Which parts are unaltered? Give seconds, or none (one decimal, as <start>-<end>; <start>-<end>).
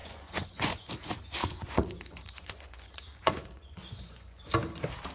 0.9-1.4; 4.5-5.1